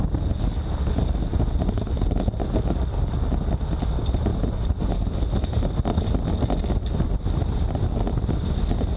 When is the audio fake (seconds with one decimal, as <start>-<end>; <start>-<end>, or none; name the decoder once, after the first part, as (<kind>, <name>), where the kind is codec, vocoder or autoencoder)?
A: 4.3-4.9 (vocoder, BigVGAN v2)